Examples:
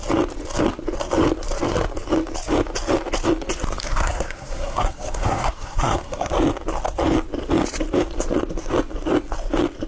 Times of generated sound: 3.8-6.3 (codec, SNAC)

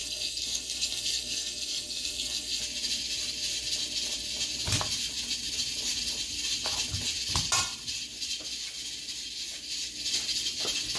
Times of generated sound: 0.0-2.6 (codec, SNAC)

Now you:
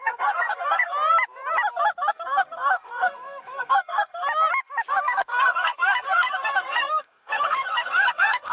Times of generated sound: 0.0-0.9 (codec, SNAC); 2.1-4.2; 5.0-8.5